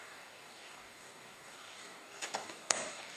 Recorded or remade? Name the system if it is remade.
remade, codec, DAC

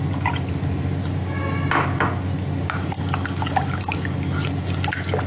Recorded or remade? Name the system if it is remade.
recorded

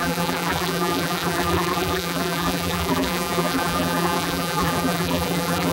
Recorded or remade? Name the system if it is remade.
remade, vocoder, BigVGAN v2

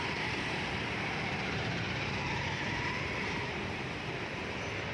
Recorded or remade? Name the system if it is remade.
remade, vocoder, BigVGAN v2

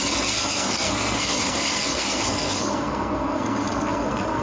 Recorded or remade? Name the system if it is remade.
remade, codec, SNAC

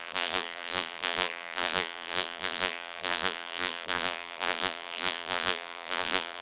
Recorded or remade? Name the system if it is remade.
remade, vocoder, BigVGAN v2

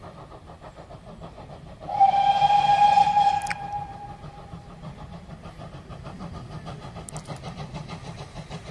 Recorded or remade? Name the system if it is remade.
recorded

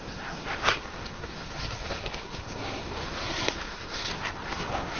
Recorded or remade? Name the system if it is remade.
remade, codec, SNAC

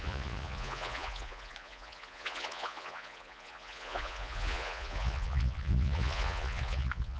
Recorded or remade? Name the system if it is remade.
remade, vocoder, Vocos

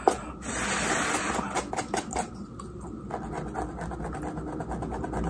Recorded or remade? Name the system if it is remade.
recorded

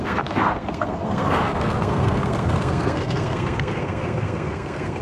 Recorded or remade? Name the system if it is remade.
remade, codec, SNAC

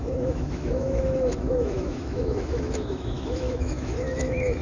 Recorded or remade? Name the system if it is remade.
remade, autoencoder, DAC-VAE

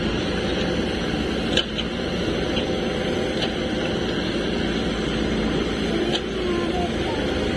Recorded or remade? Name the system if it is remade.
remade, vocoder, BigVGAN v2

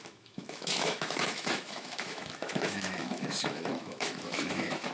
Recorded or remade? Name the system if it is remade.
remade, autoencoder, DAC-VAE